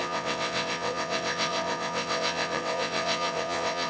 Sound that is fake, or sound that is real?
fake